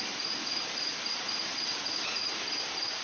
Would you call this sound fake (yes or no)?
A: yes